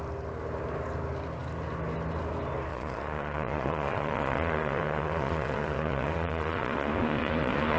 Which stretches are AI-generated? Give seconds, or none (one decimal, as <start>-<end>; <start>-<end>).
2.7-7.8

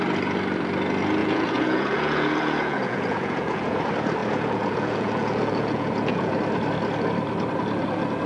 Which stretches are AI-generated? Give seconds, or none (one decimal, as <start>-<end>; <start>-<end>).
1.2-3.8; 4.2-6.3

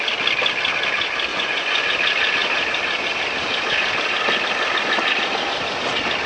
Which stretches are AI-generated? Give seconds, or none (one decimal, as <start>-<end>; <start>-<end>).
1.3-1.9